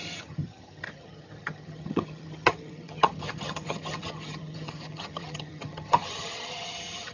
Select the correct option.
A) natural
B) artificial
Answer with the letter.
B